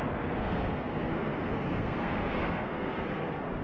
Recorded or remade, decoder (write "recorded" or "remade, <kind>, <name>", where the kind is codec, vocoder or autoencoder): remade, codec, SNAC